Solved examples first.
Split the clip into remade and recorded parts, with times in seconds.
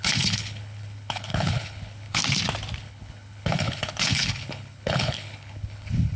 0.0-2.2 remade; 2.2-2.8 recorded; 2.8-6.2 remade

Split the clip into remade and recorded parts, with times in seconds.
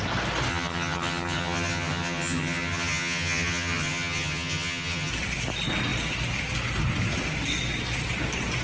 0.0-0.5 recorded; 0.5-5.1 remade; 5.1-8.6 recorded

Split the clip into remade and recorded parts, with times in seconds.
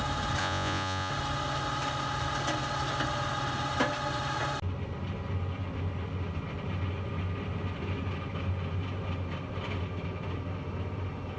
0.0-0.4 recorded; 0.4-1.1 remade; 1.1-11.4 recorded